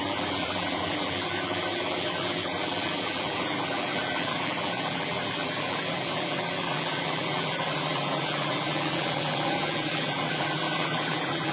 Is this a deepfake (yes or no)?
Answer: yes